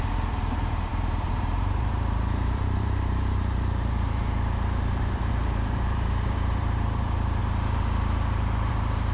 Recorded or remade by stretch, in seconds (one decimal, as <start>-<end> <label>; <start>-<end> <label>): 0.0-7.4 remade; 7.4-8.7 recorded; 8.7-9.1 remade